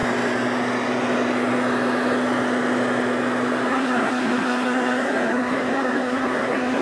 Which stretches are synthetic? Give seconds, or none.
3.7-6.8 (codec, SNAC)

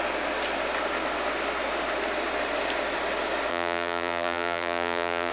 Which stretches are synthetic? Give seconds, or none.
3.5-5.3 (vocoder, BigVGAN v2)

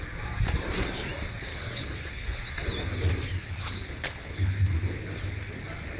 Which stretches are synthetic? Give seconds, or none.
1.5-2.4 (codec, HILCodec); 3.4-4.5

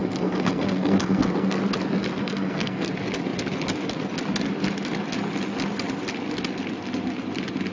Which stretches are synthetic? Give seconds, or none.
0.0-1.6 (codec, SNAC); 2.2-2.9

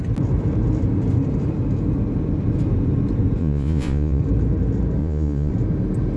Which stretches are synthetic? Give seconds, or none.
3.4-4.2 (vocoder, Vocos); 5.0-5.5